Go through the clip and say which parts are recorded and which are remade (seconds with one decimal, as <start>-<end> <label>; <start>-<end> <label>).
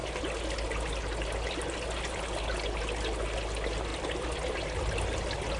0.0-5.6 recorded